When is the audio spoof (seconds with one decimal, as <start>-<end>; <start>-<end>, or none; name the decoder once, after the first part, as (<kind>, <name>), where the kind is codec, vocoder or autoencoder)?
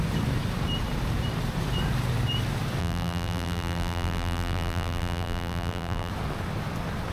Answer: 2.8-6.1 (vocoder, BigVGAN v2)